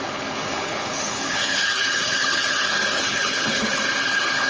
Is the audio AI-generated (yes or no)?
yes